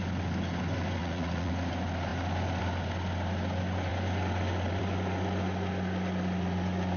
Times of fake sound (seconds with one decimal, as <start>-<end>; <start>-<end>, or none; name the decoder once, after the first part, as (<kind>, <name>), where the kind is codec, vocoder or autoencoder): 1.0-1.5 (vocoder, Vocos)